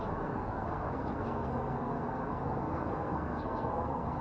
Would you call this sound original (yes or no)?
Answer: no